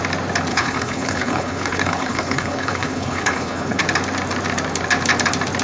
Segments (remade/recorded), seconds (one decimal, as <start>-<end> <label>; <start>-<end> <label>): 0.0-0.5 recorded; 0.5-3.8 remade; 3.8-5.6 recorded

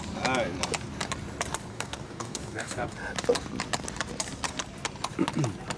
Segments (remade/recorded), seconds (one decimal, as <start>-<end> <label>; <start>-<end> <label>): 0.0-1.7 recorded; 1.7-2.9 remade; 2.9-5.8 recorded

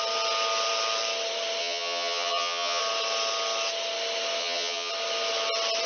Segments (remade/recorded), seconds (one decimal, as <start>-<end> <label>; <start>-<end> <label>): 0.0-1.6 recorded; 1.6-2.8 remade; 2.8-4.4 recorded; 4.4-4.9 remade; 4.9-5.9 recorded

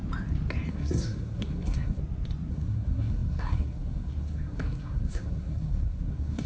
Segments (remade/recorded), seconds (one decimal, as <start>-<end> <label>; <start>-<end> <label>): 0.0-0.7 recorded; 0.7-2.0 remade; 2.0-2.5 recorded; 2.5-6.5 remade

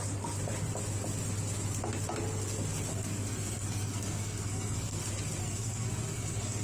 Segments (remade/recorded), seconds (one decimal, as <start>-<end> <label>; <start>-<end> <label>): 0.0-2.9 recorded; 2.9-5.0 remade; 5.0-5.4 recorded; 5.4-6.6 remade

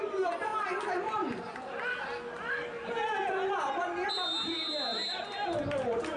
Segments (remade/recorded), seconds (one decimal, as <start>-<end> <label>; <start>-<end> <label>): 0.0-6.2 recorded

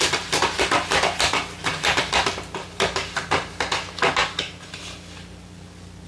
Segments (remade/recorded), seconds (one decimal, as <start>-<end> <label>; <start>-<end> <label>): 0.0-4.2 recorded; 4.2-4.8 remade; 4.8-6.1 recorded